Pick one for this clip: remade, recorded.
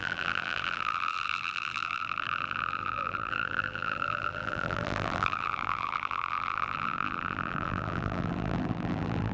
remade